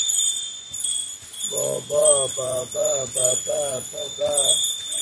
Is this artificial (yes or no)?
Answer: yes